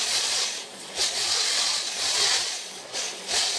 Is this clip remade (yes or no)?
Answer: yes